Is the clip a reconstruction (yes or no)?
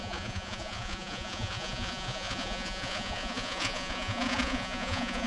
yes